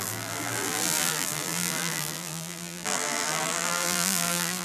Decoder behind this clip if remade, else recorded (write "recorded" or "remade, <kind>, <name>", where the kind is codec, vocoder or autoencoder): remade, vocoder, BigVGAN v2